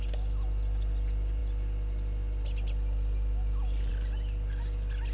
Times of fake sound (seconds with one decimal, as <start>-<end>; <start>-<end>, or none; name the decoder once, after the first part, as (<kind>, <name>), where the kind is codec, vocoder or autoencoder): none